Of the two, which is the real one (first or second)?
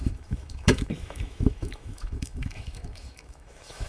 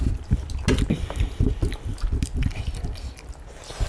second